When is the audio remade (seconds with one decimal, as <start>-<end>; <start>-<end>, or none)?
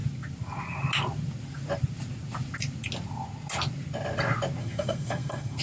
4.6-5.6